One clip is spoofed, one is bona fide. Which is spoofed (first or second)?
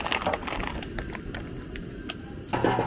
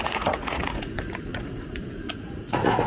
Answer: second